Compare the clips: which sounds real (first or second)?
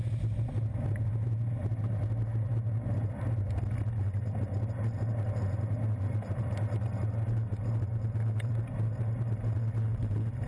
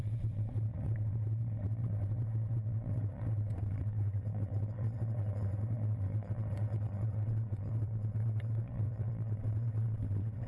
first